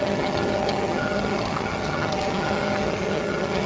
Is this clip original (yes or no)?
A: no